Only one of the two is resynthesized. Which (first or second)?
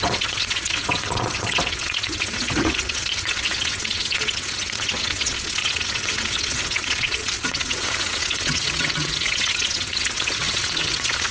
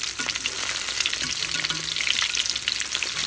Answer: first